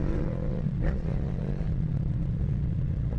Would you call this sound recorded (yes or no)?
no